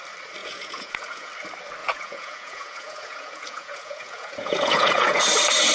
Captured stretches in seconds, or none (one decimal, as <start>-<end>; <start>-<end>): 0.0-0.4; 1.3-1.8; 5.2-5.7